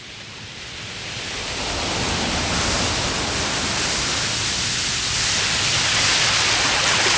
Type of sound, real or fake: real